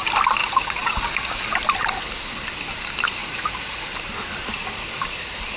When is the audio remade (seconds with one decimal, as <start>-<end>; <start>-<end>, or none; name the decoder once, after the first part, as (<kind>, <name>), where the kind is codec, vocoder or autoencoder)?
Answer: 0.4-1.0 (vocoder, Vocos); 3.2-3.8